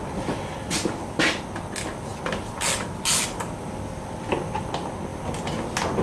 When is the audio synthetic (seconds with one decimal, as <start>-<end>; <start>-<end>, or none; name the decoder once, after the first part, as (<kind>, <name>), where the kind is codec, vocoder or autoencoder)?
none